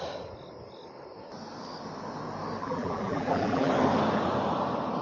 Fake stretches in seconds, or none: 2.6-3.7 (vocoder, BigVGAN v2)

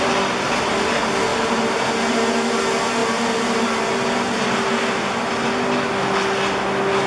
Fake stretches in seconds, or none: none

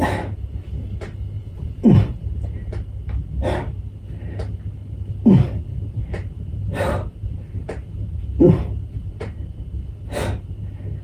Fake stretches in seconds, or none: 1.4-2.7 (vocoder, BigVGAN v2); 5.7-8.2; 8.8-9.8

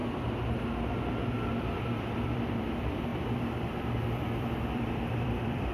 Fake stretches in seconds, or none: 1.8-5.7 (vocoder, BigVGAN v2)

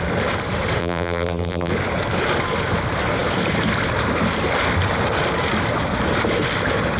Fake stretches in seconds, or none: 0.8-1.7 (vocoder, BigVGAN v2)

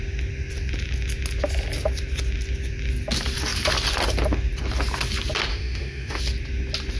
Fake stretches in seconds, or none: 5.5-6.2 (autoencoder, DAC-VAE)